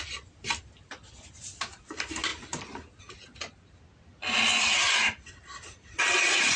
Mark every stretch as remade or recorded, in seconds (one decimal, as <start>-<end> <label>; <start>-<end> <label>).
0.0-6.6 recorded